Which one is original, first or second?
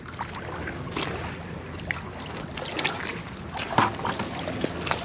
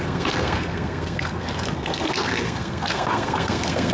first